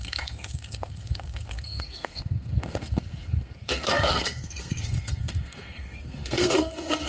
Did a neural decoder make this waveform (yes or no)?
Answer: yes